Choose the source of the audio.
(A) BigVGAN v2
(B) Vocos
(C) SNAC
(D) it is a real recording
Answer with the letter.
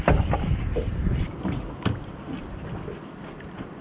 D